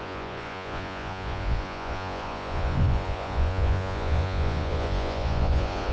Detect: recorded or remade remade